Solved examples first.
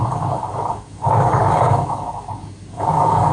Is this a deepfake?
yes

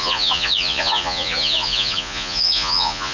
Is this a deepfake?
yes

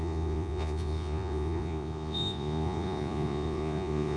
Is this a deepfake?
yes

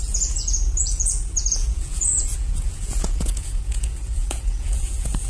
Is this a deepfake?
yes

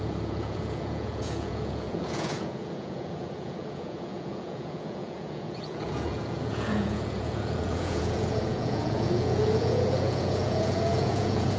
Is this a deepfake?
yes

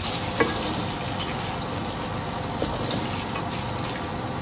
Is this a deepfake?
no